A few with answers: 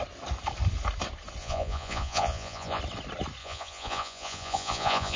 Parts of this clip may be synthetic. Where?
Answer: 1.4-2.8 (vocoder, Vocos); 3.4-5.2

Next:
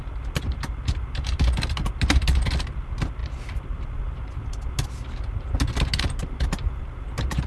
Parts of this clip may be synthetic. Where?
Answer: none

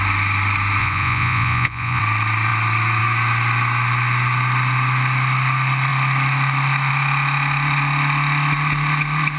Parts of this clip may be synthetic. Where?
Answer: 0.8-2.0 (vocoder, Vocos)

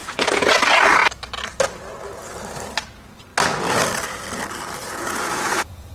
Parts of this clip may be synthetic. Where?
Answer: 0.0-0.5 (vocoder, Vocos); 4.8-5.9

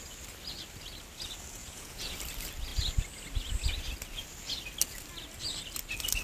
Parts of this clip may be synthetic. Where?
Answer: 1.6-2.2 (vocoder, Vocos)

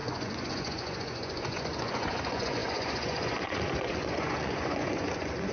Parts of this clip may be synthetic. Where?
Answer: 0.0-5.5 (vocoder, Vocos)